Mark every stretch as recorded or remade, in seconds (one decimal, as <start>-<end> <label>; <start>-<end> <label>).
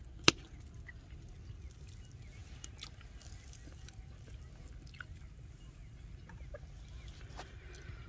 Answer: 0.0-8.1 recorded